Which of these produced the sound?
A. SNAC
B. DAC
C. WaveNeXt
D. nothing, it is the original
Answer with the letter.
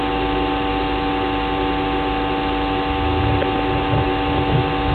D